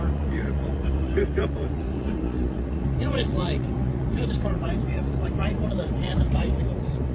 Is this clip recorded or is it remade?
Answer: remade